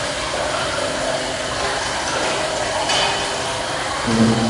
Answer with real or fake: real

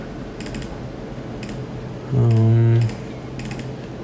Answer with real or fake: real